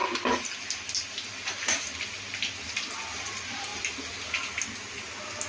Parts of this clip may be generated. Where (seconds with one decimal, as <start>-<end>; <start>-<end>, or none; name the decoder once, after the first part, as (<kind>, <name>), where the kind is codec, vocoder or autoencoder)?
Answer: none